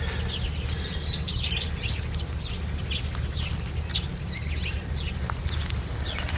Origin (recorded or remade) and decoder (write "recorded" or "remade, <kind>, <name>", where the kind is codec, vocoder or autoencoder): recorded